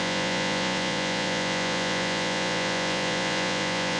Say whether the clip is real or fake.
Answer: fake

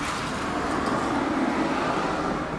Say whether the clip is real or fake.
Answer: real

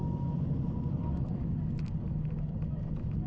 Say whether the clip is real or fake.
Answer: real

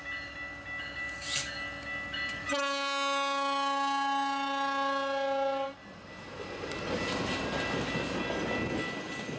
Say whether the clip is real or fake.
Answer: real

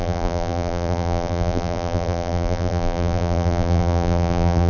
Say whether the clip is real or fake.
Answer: fake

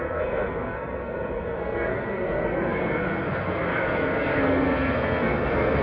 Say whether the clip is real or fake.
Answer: fake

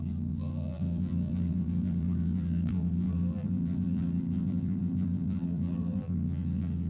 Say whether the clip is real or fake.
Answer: fake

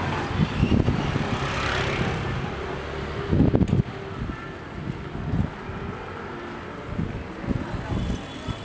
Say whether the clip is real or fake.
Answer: real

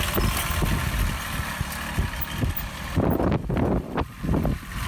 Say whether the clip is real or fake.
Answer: real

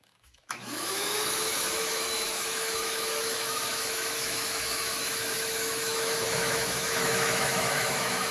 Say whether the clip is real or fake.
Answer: fake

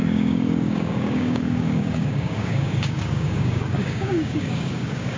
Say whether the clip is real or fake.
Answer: fake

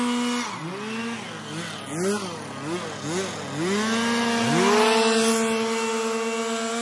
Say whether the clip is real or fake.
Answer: real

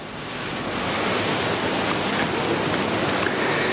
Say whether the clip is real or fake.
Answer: real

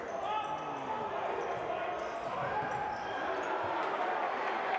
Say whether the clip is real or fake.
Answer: real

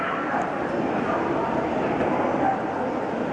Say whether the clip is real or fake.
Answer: real